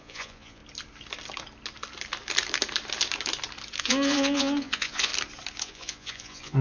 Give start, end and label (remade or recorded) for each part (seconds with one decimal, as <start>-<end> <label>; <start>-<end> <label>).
0.0-0.6 remade; 0.6-3.8 recorded; 3.8-5.1 remade; 5.1-5.6 recorded; 5.6-6.6 remade